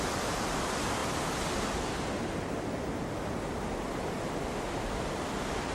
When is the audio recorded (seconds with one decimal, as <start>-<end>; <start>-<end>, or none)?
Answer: 0.0-5.7